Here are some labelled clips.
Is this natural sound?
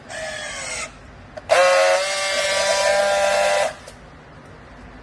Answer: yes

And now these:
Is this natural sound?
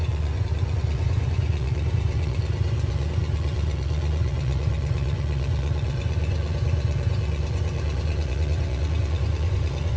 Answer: no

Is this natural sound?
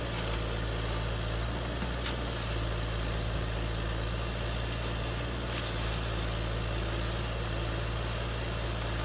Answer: yes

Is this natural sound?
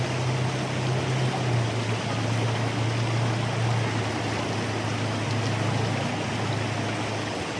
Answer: yes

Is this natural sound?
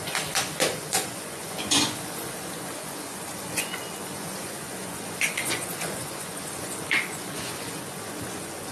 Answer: no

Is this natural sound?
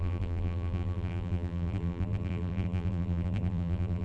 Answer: no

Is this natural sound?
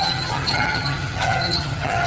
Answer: no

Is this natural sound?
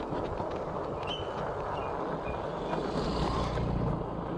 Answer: yes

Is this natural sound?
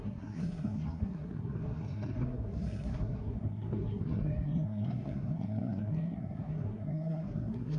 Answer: no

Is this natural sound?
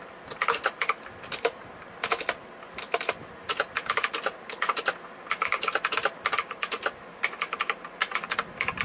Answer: yes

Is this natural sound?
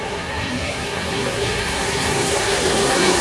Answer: no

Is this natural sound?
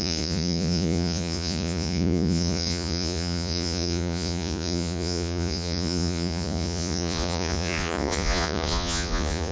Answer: no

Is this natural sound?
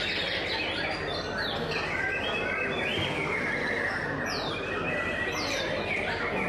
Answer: yes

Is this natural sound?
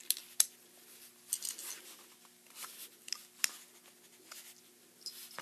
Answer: yes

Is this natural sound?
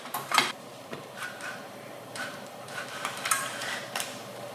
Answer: no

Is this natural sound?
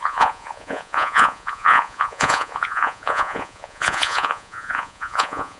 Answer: no